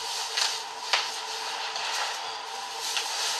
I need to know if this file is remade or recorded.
recorded